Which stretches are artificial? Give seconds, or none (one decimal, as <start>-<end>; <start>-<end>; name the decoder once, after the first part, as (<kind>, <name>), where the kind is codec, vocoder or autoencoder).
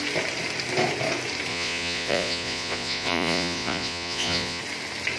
1.5-4.6 (vocoder, Vocos)